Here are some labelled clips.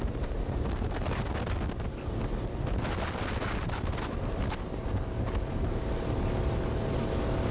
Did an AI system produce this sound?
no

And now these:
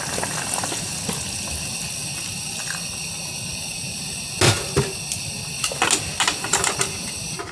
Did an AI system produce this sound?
no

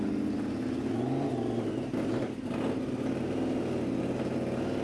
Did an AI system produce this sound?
no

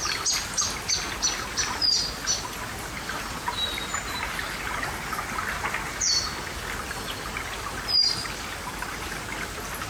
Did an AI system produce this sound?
no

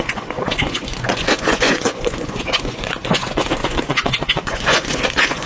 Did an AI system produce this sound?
yes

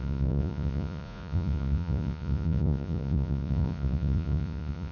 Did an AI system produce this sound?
yes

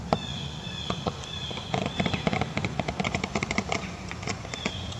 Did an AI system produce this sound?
yes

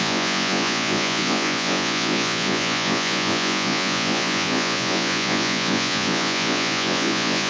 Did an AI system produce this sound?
yes